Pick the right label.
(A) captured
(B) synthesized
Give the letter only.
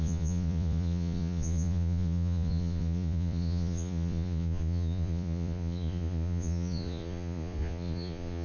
B